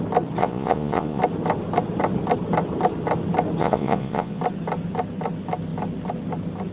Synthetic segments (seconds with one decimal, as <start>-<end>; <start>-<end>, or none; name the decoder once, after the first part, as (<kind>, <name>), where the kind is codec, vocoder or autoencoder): 0.4-1.2 (vocoder, Vocos); 3.6-4.4